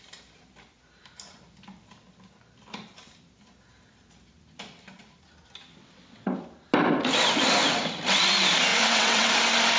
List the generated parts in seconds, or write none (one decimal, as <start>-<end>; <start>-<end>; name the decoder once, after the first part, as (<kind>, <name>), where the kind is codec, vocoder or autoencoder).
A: 5.8-6.4 (vocoder, WaveNeXt); 8.7-9.3